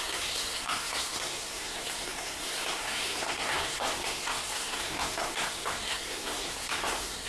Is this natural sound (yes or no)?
no